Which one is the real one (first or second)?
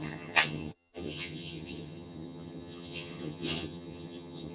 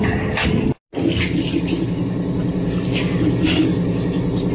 second